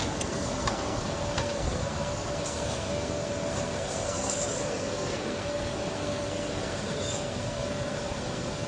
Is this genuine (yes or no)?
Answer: no